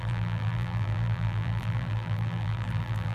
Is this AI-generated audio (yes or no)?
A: yes